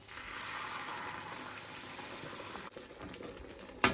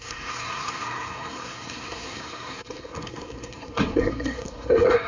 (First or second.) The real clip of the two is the first